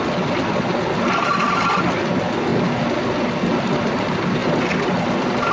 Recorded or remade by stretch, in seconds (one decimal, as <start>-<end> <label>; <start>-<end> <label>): 0.0-5.5 recorded